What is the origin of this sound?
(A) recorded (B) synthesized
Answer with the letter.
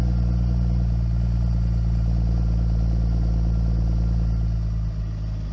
A